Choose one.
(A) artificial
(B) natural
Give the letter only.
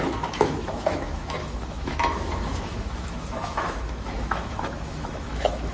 A